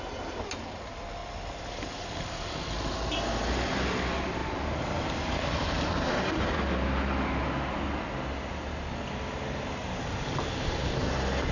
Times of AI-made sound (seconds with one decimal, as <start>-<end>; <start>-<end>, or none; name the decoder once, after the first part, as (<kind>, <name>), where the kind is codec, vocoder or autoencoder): 1.2-2.5 (vocoder, BigVGAN v2); 4.4-6.1